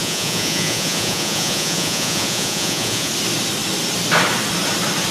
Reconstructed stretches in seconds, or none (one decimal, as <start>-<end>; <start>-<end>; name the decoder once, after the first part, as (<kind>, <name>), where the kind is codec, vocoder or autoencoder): 0.0-3.1 (vocoder, Vocos)